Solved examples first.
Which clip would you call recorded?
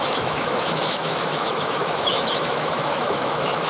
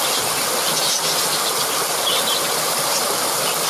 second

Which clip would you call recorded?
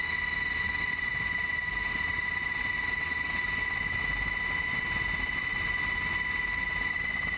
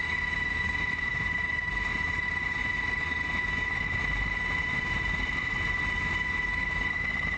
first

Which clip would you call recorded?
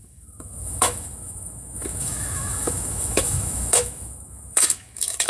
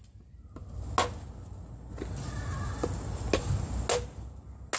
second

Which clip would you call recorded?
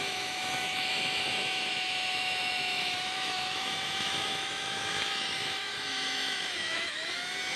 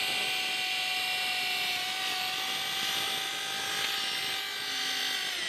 second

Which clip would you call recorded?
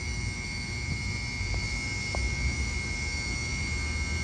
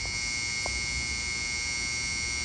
second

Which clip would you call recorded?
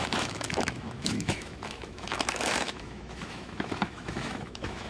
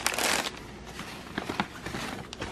second